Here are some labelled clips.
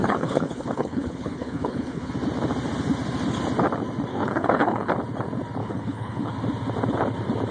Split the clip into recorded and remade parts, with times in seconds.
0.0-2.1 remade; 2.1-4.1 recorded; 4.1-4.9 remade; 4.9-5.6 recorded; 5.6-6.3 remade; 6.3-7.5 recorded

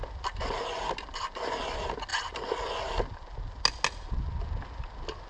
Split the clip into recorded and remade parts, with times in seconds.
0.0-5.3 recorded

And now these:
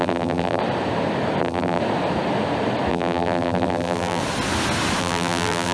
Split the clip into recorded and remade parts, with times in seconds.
0.0-0.6 remade; 0.6-1.4 recorded; 1.4-1.8 remade; 1.8-2.9 recorded; 2.9-4.2 remade; 4.2-5.0 recorded; 5.0-5.7 remade

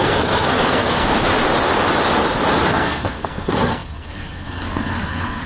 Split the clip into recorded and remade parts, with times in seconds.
0.0-1.3 remade; 1.3-2.7 recorded; 2.7-5.5 remade

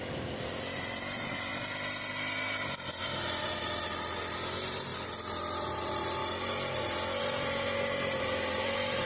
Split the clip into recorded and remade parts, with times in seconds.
0.0-1.5 remade; 1.5-3.0 recorded; 3.0-4.9 remade; 4.9-5.8 recorded; 5.8-6.2 remade; 6.2-7.2 recorded; 7.2-9.1 remade

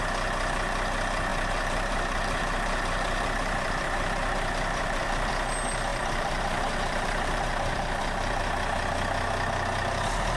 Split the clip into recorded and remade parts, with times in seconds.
0.0-1.3 recorded; 1.3-5.3 remade; 5.3-5.9 recorded; 5.9-8.4 remade; 8.4-10.4 recorded